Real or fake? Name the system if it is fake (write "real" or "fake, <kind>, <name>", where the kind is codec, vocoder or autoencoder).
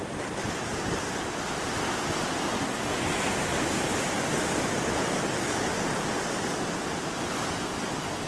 real